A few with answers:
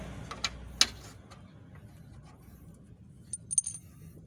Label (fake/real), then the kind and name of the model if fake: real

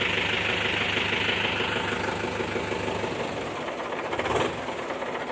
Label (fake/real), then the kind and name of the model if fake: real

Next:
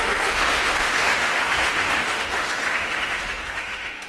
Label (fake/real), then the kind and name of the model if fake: fake, autoencoder, DAC-VAE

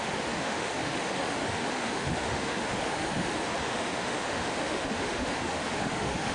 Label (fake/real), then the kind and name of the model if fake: fake, autoencoder, DAC-VAE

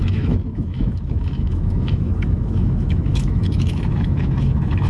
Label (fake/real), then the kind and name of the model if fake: fake, autoencoder, DAC-VAE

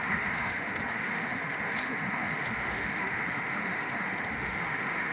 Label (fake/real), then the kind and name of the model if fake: fake, autoencoder, DAC-VAE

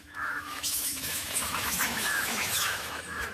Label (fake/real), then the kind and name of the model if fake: fake, autoencoder, DAC-VAE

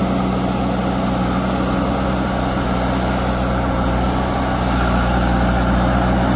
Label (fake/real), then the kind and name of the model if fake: real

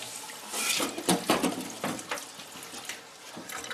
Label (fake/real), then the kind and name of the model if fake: real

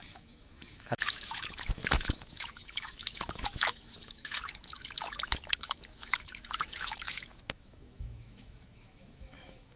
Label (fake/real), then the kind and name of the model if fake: fake, autoencoder, DAC-VAE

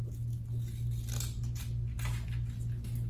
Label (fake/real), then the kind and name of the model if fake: real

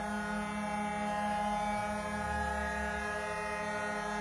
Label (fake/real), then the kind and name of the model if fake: real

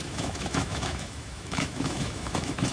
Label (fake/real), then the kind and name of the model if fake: fake, autoencoder, DAC-VAE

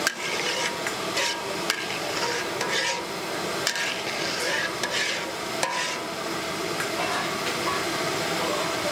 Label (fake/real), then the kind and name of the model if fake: real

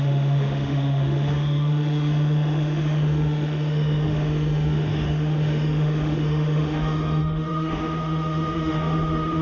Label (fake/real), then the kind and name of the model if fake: fake, autoencoder, DAC-VAE